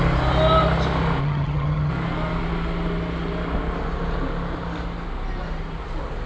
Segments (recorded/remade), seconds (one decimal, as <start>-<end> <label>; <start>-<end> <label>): 0.0-1.2 recorded; 1.2-1.9 remade; 1.9-6.3 recorded